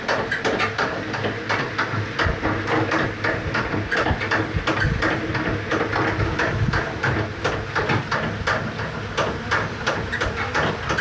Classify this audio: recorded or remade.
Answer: recorded